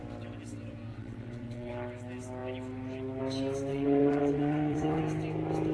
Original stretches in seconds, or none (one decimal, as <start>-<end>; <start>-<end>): 0.0-0.9; 1.7-3.7; 5.0-5.7